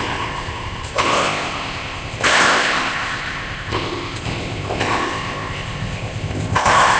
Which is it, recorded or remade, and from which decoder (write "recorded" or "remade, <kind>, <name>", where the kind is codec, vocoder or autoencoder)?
remade, codec, ZipCodec